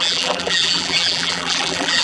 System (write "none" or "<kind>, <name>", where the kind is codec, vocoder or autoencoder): vocoder, BigVGAN v2